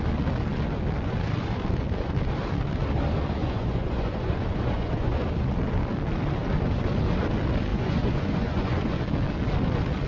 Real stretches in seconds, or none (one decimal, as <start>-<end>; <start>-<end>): 0.0-3.4; 5.2-7.7; 9.0-10.1